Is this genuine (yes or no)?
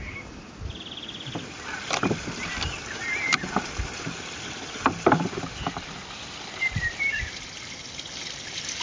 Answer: no